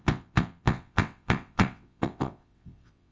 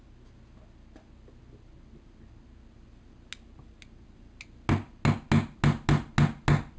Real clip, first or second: second